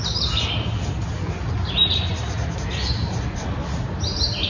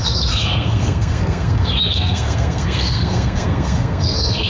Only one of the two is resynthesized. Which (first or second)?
second